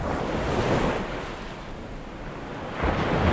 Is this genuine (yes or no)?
yes